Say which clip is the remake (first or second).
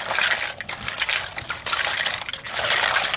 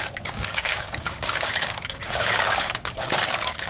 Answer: second